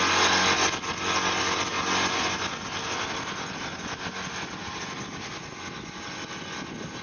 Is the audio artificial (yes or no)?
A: no